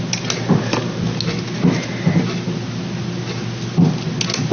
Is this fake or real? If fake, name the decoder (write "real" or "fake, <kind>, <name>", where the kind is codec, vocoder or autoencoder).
real